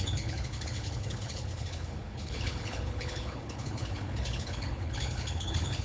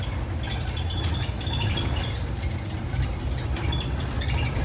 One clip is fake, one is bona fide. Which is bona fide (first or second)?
second